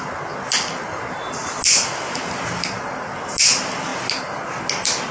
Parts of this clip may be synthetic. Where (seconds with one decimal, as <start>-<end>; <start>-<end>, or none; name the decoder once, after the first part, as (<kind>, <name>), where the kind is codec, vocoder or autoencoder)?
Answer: none